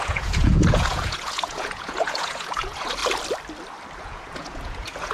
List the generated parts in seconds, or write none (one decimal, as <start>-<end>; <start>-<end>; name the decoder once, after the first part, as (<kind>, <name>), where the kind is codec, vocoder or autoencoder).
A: 0.0-3.0 (vocoder, Vocos); 4.0-5.1